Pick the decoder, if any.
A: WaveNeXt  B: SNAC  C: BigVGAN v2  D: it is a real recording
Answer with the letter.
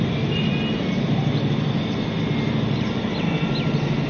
D